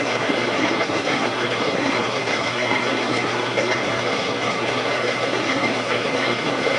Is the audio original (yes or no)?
no